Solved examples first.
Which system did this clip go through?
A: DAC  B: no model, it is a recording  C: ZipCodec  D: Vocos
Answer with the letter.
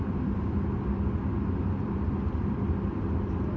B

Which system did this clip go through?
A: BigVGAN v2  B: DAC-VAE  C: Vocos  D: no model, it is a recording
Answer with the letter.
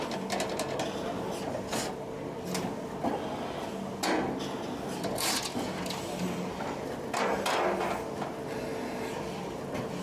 D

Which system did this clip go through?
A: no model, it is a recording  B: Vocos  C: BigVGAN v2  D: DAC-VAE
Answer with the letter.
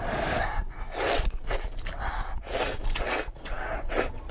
A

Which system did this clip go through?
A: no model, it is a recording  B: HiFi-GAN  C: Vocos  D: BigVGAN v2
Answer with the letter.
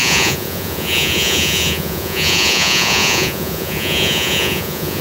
C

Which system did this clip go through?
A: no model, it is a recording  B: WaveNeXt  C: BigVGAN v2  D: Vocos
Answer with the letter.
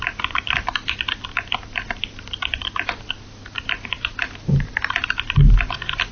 A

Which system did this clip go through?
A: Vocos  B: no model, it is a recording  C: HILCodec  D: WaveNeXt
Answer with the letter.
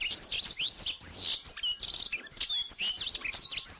B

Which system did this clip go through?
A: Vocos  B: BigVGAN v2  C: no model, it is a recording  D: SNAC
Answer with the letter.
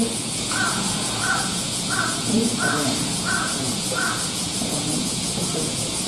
A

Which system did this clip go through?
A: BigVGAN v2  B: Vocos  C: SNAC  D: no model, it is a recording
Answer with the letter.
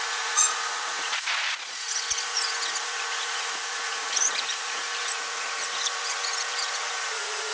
B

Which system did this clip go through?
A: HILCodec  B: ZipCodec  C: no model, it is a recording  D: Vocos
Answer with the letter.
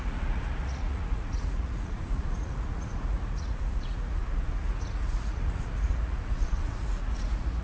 D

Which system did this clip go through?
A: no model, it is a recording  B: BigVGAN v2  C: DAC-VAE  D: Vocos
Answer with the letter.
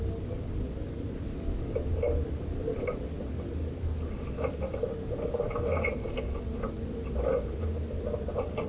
A